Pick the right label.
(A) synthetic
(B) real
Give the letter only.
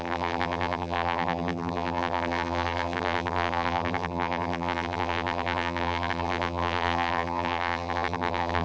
A